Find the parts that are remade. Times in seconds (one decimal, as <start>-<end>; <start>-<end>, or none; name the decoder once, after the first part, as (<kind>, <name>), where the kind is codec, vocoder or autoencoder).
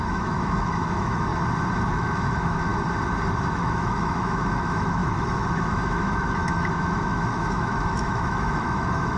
0.0-1.3 (autoencoder, DAC-VAE); 1.9-2.7; 3.5-9.2